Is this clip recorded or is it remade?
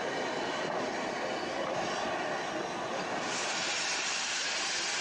recorded